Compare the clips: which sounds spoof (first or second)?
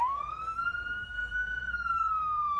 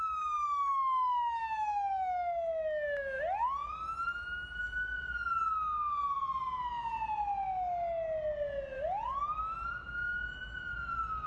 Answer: first